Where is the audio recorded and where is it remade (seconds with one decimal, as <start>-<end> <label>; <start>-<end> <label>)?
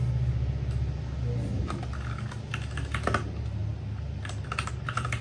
0.0-5.2 recorded